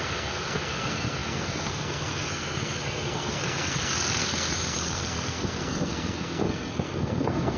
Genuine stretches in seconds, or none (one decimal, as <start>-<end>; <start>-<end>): none

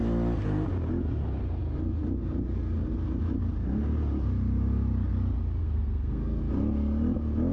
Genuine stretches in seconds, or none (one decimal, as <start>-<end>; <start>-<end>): 0.0-5.6; 6.4-7.5

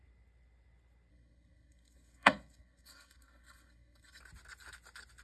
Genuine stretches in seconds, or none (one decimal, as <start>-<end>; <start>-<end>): 0.0-1.1; 4.2-5.2

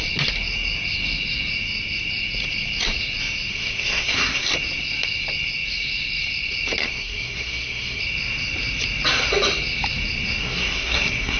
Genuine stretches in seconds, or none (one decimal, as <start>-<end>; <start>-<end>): 0.0-3.5; 4.5-6.8; 8.0-10.4

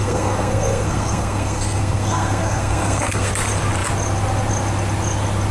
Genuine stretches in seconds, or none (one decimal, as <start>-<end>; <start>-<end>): 3.3-5.5

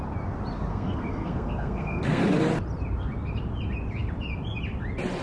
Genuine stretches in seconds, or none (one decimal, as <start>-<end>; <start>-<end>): 0.0-0.7; 2.2-5.2

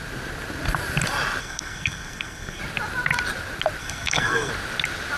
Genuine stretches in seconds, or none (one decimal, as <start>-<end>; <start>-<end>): 0.0-1.4; 2.6-3.8; 4.5-5.2

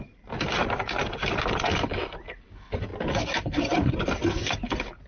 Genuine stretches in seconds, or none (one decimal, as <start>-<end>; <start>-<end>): 0.0-5.1